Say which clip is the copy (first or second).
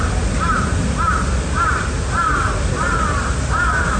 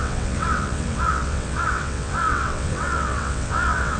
second